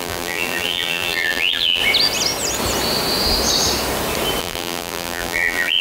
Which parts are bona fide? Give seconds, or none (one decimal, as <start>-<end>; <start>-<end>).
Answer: 1.8-4.4